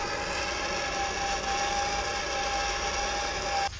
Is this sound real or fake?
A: real